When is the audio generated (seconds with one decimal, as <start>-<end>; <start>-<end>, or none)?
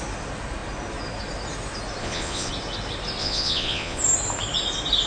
2.0-2.5; 3.2-4.0